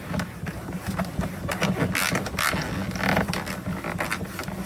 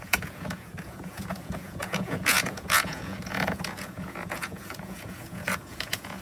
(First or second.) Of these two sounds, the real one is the first